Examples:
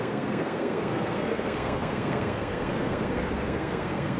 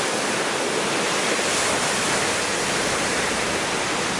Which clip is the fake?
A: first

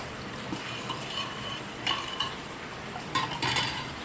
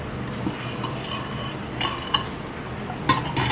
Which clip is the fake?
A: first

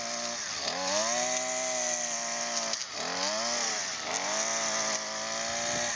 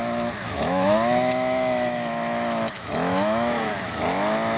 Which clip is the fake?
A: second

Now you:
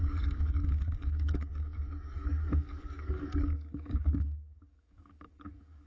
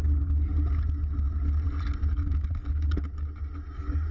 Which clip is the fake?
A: first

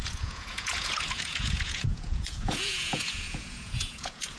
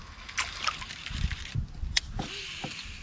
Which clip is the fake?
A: first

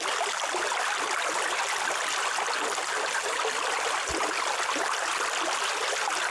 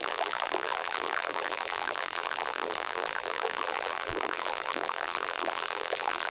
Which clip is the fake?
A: second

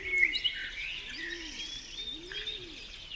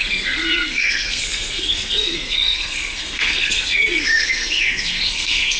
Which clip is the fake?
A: second